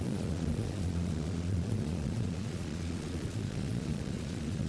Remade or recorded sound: remade